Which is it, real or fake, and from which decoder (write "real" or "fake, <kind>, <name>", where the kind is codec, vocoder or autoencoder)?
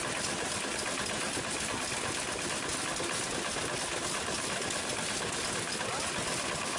real